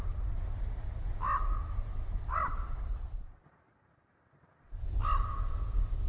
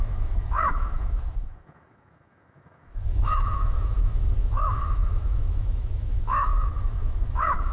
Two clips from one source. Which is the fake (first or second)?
second